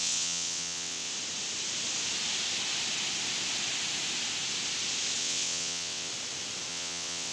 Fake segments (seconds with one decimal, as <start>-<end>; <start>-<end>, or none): 0.0-1.1; 5.2-6.1; 6.7-7.3